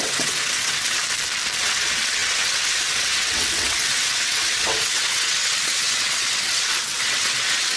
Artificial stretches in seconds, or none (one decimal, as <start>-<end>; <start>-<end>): 0.0-1.0; 1.6-7.8